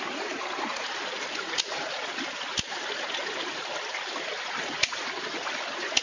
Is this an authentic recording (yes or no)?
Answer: yes